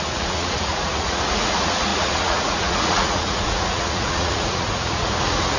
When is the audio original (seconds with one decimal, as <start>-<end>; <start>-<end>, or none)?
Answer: none

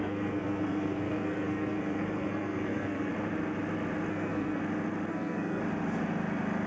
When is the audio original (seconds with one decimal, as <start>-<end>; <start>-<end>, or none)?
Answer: 3.1-4.1; 4.6-5.1; 5.6-6.7

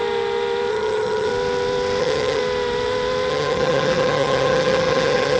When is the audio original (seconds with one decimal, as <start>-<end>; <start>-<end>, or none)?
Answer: 0.0-0.7; 1.3-2.0; 2.4-3.3

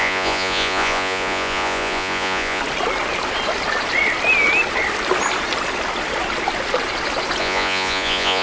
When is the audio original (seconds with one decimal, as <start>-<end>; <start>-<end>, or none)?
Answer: 2.6-7.4

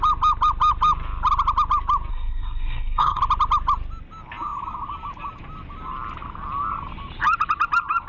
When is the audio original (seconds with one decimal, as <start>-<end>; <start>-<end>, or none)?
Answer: 0.0-2.1; 3.2-8.1

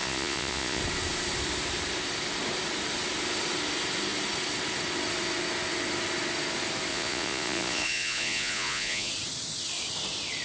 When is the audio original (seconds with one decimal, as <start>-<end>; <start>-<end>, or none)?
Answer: 0.8-6.9; 9.1-10.4